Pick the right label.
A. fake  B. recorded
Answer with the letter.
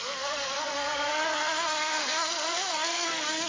A